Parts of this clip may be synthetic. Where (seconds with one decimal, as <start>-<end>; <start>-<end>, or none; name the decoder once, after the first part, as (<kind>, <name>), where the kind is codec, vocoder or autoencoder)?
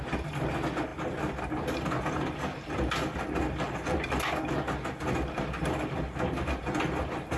none